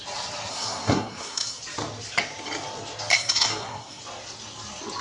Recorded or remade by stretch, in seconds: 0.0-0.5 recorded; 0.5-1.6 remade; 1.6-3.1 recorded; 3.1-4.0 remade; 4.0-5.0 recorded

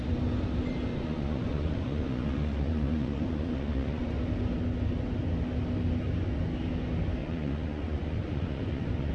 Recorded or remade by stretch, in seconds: 0.0-0.9 recorded; 0.9-4.1 remade; 4.1-7.2 recorded; 7.2-9.1 remade

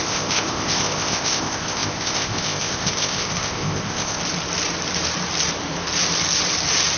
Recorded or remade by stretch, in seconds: 0.0-4.2 remade; 4.2-7.0 recorded

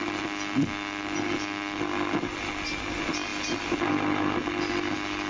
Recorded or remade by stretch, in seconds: 0.0-5.3 recorded

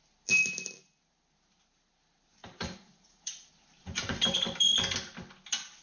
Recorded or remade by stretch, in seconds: 0.0-2.4 recorded; 2.4-3.3 remade; 3.3-3.8 recorded; 3.8-4.6 remade; 4.6-5.8 recorded

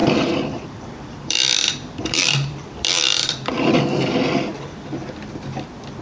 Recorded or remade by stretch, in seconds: 0.0-3.5 remade; 3.5-6.0 recorded